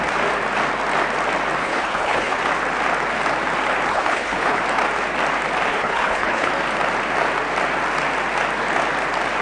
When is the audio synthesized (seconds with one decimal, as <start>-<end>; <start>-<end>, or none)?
1.6-2.4; 3.9-4.6; 5.7-6.5